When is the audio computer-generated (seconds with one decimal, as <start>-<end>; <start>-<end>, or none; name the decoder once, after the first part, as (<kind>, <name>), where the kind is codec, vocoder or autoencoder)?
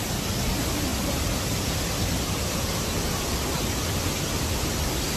none